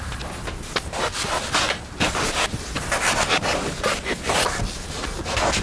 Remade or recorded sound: recorded